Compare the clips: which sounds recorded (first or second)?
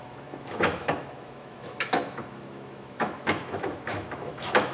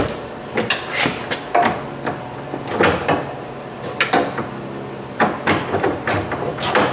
second